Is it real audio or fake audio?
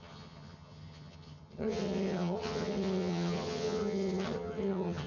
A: fake